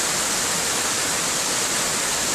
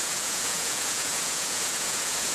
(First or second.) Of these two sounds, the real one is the first